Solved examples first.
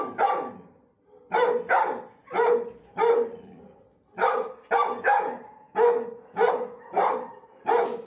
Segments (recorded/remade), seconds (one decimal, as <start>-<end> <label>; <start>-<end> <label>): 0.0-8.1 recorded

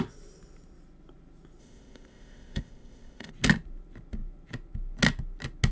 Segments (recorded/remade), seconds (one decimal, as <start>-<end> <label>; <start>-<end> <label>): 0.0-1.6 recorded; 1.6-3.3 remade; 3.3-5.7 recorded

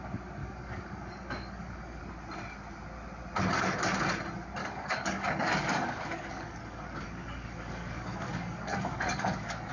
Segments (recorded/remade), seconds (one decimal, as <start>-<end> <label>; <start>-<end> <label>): 0.0-0.4 recorded; 0.4-2.0 remade; 2.0-4.6 recorded; 4.6-9.7 remade